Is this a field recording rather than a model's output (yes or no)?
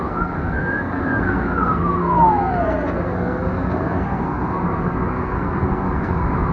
no